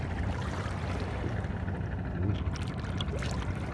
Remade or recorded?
recorded